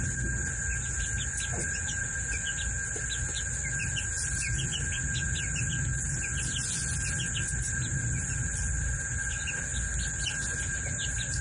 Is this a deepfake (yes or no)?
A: no